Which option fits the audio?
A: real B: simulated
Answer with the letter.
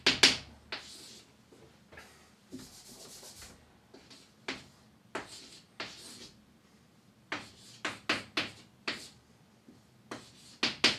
A